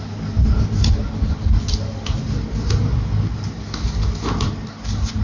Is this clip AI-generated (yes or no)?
no